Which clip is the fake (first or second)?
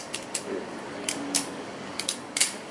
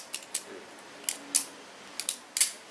first